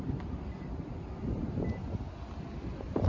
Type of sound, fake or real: real